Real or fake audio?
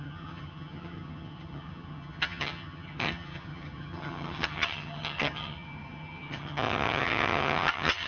fake